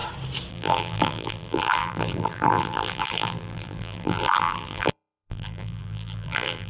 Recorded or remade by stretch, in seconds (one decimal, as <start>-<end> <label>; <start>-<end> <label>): 0.0-0.5 recorded; 0.5-6.7 remade